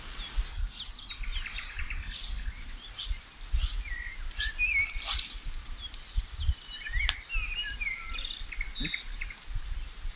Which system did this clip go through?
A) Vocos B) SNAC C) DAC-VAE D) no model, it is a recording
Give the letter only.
D